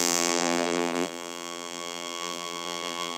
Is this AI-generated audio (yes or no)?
yes